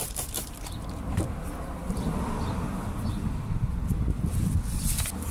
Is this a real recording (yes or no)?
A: no